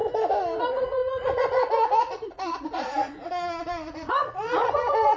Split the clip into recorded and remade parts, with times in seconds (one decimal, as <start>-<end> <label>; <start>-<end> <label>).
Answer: 0.0-0.6 recorded; 0.6-5.2 remade

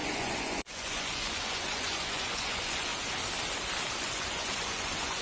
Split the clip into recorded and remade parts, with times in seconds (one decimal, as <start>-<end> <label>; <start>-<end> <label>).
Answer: 0.0-2.9 remade; 2.9-4.0 recorded; 4.0-5.2 remade

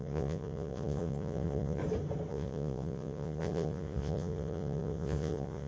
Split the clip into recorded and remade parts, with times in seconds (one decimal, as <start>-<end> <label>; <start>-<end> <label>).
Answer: 0.0-1.8 remade; 1.8-2.3 recorded; 2.3-5.7 remade

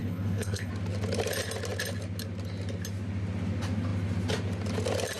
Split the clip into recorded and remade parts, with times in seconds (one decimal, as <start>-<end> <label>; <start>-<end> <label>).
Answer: 0.0-0.7 remade; 0.7-5.2 recorded